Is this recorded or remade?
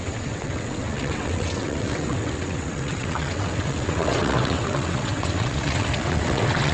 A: remade